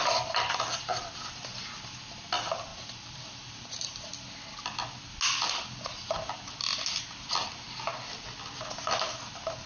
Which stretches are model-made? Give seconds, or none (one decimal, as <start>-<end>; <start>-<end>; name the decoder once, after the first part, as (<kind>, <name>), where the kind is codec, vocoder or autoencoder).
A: 2.7-4.1 (vocoder, BigVGAN v2)